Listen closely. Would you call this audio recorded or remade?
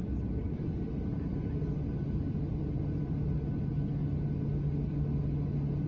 recorded